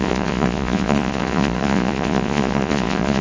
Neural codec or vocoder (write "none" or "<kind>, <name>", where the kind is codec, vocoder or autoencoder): vocoder, Vocos